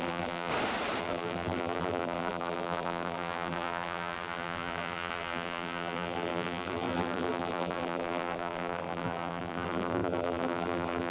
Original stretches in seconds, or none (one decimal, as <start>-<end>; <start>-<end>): 0.5-1.0